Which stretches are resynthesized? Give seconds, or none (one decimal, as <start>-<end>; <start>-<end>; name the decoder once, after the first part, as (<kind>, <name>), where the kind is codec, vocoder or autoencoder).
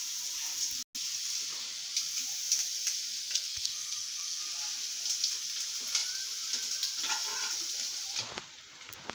3.2-4.4 (codec, SNAC)